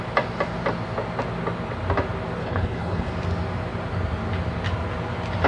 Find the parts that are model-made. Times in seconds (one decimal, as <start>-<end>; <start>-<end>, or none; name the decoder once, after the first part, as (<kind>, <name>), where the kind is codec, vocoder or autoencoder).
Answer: 2.4-3.1 (codec, HILCodec)